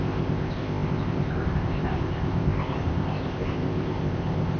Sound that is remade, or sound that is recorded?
remade